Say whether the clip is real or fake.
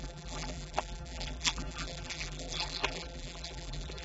fake